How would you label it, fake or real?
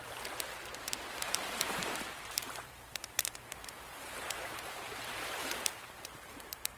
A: fake